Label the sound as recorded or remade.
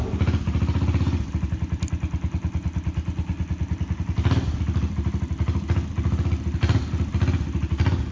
recorded